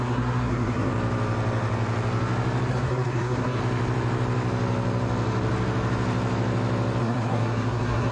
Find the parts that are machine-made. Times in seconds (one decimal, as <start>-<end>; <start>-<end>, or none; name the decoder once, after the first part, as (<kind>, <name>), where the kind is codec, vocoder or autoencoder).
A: 0.0-0.9 (codec, SNAC); 2.7-3.6; 7.0-8.1